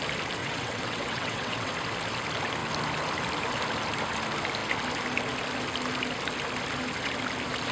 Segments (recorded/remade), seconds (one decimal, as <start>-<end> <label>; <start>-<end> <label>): 0.0-0.4 recorded; 0.4-1.7 remade; 1.7-7.7 recorded